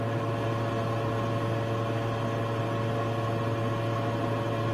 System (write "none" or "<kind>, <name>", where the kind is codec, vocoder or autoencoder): none